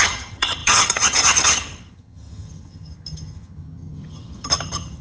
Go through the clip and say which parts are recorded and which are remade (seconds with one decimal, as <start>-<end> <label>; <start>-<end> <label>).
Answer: 0.0-5.0 remade

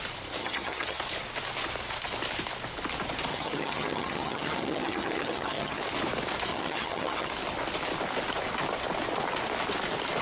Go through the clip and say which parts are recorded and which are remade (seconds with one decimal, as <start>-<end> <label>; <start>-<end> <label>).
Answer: 0.0-0.4 recorded; 0.4-1.0 remade; 1.0-3.3 recorded; 3.3-5.8 remade; 5.8-6.5 recorded; 6.5-7.3 remade; 7.3-10.2 recorded